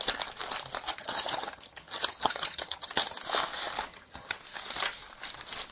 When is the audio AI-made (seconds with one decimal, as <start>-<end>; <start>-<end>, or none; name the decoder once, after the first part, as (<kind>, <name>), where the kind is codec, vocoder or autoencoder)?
0.9-3.2 (vocoder, HiFi-GAN); 3.9-4.4